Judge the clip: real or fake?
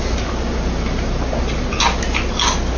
real